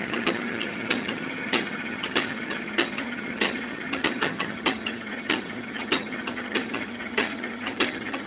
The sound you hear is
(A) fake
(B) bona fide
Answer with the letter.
A